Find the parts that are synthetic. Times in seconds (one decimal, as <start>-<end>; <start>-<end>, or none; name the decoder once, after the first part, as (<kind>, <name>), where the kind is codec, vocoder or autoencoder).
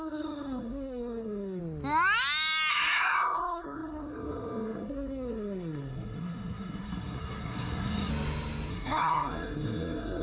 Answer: 0.0-1.6 (codec, SNAC); 2.7-8.1; 8.7-10.2